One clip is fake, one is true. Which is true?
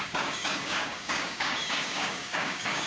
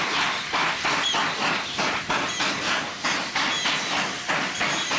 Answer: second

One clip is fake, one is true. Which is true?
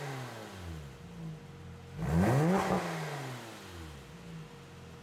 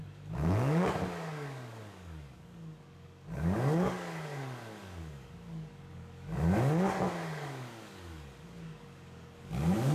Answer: first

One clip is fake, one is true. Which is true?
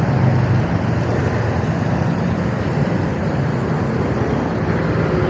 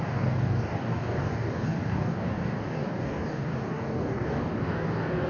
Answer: first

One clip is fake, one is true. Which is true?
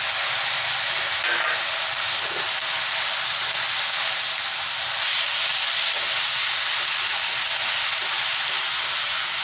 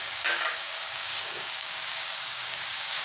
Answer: first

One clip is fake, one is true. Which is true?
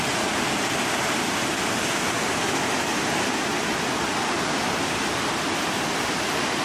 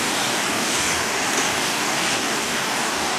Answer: first